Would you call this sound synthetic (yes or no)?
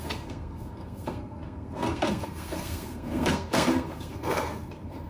yes